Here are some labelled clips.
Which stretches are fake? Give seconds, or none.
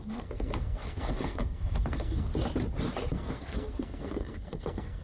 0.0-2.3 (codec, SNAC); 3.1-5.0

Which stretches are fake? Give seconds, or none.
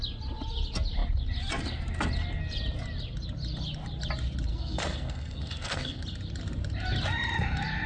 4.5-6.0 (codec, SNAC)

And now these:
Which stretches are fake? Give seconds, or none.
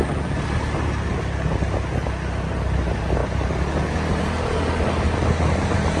none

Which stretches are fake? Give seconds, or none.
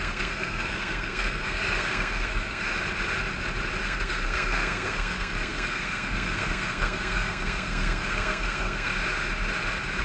0.0-2.7 (codec, SNAC); 3.8-8.9